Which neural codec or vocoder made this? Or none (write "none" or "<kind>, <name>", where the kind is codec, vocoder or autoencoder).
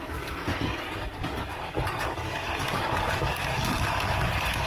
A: codec, DAC